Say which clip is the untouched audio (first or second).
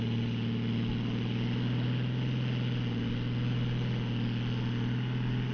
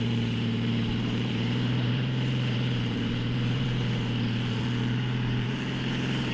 first